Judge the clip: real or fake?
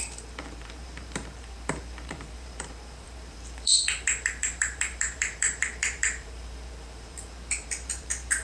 fake